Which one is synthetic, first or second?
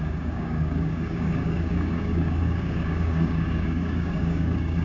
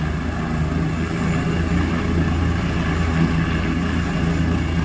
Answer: first